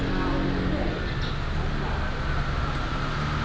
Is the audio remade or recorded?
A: recorded